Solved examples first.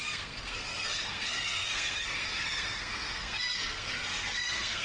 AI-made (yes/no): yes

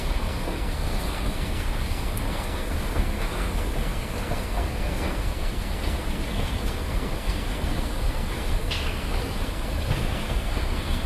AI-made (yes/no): yes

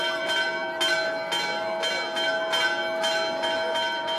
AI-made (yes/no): no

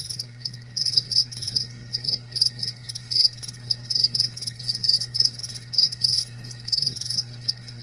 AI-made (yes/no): yes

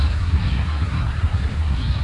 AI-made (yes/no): yes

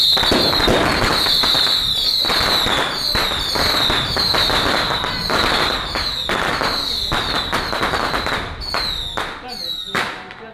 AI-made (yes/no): no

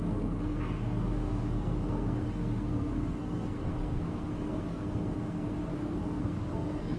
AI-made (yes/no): yes